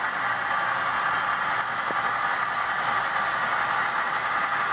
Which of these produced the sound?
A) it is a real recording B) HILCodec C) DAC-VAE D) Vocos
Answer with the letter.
A